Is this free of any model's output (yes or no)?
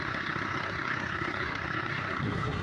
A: no